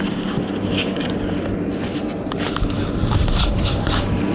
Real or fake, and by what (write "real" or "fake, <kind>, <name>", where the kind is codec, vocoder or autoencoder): fake, vocoder, BigVGAN v2